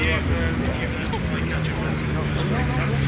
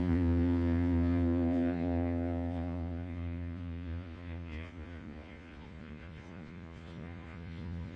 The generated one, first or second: second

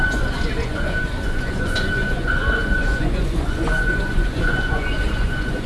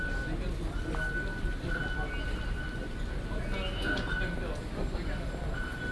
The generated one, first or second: first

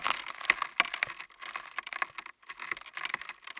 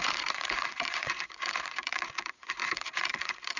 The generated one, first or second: second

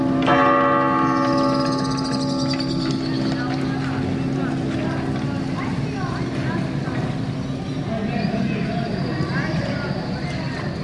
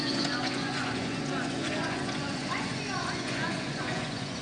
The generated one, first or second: second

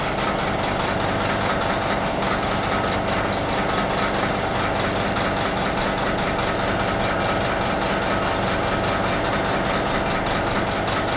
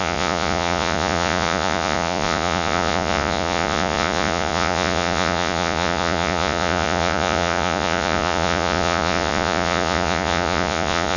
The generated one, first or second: second